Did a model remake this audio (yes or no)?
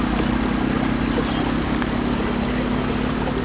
no